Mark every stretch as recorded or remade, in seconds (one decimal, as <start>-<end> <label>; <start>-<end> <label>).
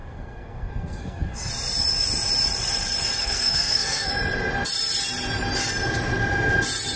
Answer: 0.0-1.5 remade; 1.5-3.2 recorded; 3.2-4.1 remade; 4.1-7.0 recorded